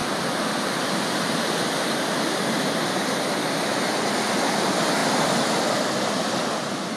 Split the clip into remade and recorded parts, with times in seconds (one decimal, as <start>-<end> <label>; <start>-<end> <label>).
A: 0.0-7.0 recorded